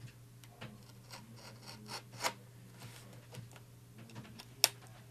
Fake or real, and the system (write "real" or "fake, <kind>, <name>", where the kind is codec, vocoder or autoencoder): real